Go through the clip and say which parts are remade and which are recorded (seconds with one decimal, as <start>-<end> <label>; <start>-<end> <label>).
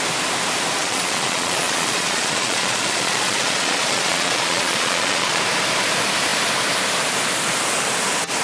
0.0-0.8 recorded; 0.8-5.4 remade; 5.4-8.4 recorded